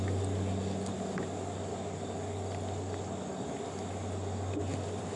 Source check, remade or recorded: recorded